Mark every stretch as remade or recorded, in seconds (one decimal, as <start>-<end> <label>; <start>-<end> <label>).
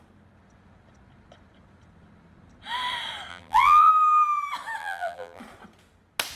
0.0-3.3 recorded; 3.3-3.9 remade; 3.9-4.8 recorded; 4.8-5.4 remade; 5.4-6.4 recorded